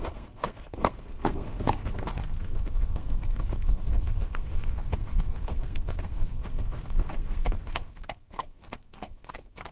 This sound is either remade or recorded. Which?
remade